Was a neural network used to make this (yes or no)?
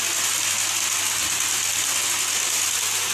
no